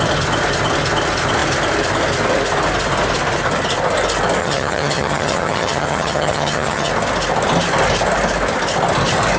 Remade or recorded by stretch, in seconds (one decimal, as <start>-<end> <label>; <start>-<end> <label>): 0.0-4.4 recorded; 4.4-6.9 remade; 6.9-9.4 recorded